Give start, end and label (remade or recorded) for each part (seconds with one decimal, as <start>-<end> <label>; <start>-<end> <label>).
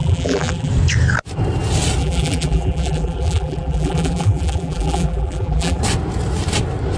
0.0-0.7 remade; 0.7-2.0 recorded; 2.0-5.8 remade; 5.8-7.0 recorded